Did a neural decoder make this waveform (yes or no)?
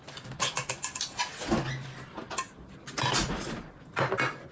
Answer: no